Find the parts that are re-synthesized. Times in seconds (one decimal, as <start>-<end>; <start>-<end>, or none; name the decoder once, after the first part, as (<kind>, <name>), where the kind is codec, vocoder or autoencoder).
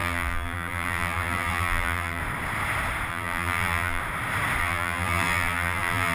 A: 0.0-2.2 (vocoder, BigVGAN v2); 3.1-4.0; 4.6-6.1